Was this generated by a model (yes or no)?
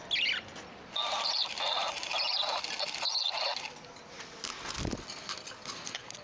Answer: no